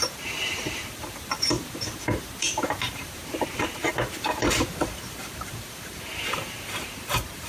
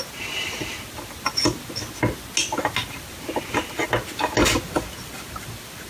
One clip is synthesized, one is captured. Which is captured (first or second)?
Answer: second